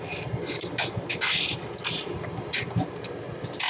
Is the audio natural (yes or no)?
yes